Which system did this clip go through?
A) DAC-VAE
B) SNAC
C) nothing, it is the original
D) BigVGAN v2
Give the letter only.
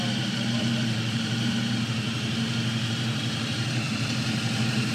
D